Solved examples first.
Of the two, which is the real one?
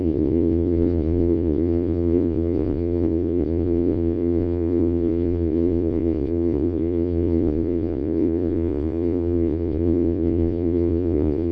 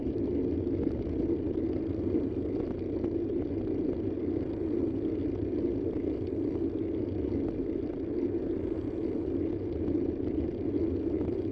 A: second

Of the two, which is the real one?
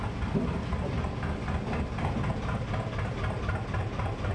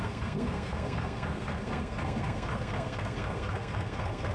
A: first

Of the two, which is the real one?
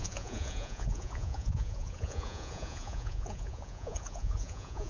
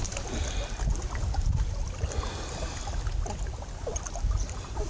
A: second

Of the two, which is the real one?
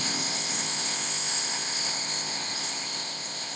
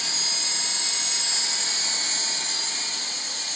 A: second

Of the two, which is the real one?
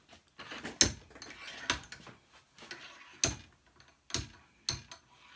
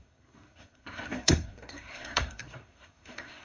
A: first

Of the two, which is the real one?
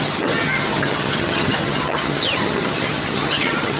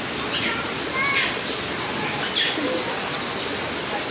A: second